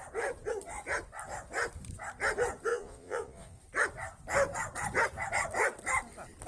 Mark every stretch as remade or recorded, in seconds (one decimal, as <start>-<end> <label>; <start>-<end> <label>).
0.0-2.7 recorded; 2.7-3.6 remade; 3.6-6.5 recorded